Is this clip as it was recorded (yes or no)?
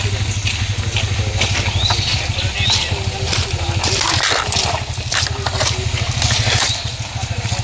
yes